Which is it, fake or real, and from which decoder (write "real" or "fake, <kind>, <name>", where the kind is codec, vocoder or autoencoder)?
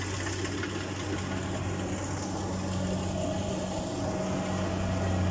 real